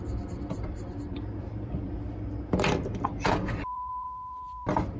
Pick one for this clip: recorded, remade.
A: remade